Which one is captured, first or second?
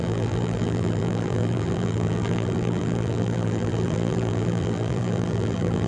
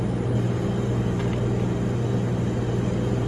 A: second